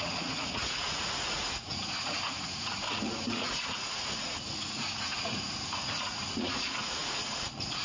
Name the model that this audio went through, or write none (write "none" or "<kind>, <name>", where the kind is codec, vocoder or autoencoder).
vocoder, Vocos